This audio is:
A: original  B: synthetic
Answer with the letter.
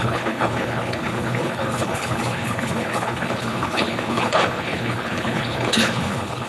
B